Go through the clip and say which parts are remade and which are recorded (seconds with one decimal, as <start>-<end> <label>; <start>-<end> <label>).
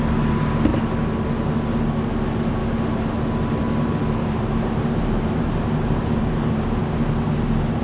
0.0-4.2 recorded; 4.2-6.8 remade; 6.8-7.8 recorded